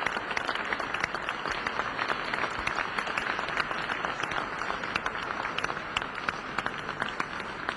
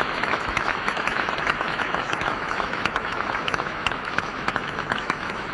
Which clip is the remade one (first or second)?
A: second